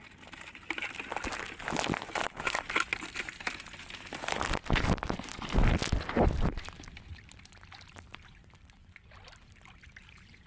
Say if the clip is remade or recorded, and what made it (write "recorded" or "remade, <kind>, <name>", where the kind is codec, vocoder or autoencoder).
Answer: recorded